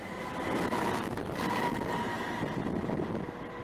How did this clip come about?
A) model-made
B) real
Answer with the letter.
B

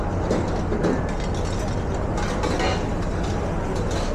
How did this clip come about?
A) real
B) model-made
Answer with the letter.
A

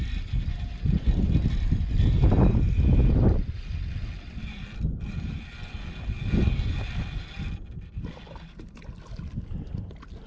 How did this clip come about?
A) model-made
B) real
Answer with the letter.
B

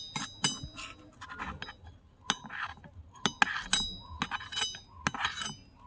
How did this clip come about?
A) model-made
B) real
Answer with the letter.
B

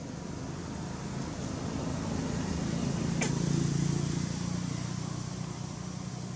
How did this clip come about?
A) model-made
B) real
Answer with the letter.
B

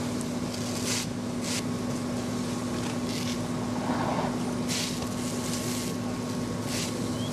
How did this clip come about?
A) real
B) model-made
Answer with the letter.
A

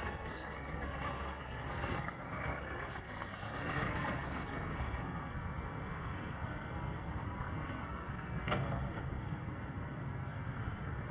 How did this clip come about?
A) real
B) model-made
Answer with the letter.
B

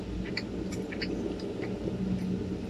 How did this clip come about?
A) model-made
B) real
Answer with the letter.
B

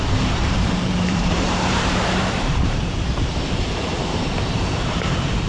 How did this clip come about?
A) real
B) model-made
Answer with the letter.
B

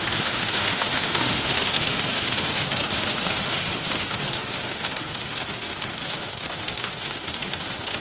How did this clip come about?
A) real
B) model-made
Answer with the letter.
B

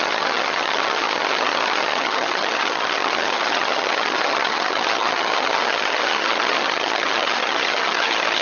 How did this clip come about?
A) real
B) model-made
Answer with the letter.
B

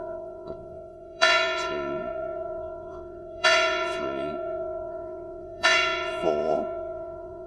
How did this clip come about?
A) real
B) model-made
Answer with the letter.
B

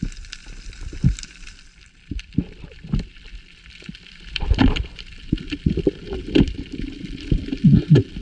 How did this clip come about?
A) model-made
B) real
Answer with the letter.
A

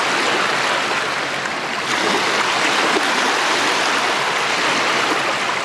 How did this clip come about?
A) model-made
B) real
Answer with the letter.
B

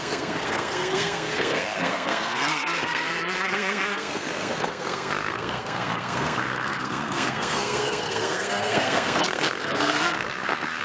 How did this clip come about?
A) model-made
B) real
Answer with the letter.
A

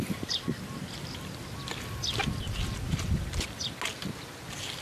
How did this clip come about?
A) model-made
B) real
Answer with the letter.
B